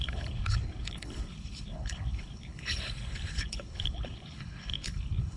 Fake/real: fake